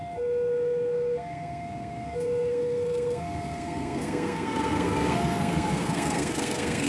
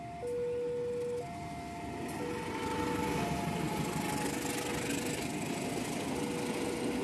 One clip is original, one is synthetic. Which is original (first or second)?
second